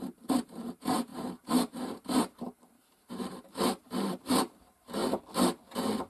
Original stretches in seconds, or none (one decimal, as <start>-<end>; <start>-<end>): 5.0-6.1